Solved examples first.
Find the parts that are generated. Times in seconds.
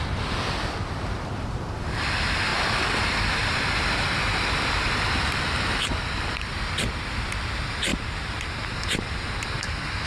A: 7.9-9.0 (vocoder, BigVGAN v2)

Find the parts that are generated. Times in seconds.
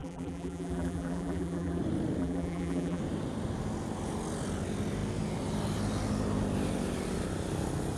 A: 0.0-1.8 (vocoder, BigVGAN v2); 2.2-3.0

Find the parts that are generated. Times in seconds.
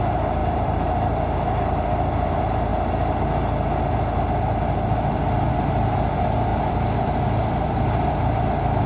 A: 0.4-1.2 (vocoder, BigVGAN v2); 6.5-8.3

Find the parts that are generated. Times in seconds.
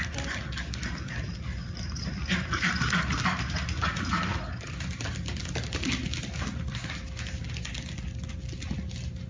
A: none